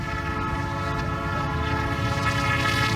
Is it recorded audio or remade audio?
recorded